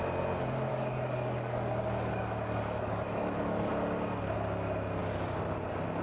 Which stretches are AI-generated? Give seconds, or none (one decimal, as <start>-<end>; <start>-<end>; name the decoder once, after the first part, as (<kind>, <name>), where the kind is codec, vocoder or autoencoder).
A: 0.7-3.7 (codec, DAC)